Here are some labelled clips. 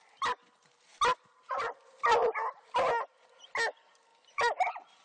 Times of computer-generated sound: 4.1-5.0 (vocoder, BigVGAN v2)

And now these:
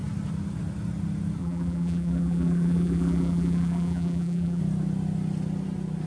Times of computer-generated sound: 1.4-4.6 (vocoder, BigVGAN v2)